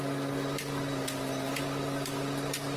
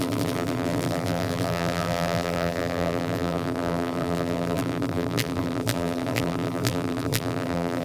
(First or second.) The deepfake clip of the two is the second